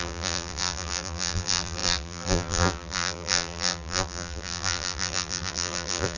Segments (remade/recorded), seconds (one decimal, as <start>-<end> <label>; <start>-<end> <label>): 0.0-6.2 remade